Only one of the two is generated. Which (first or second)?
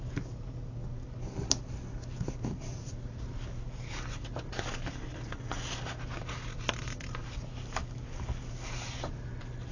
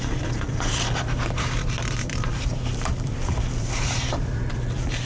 second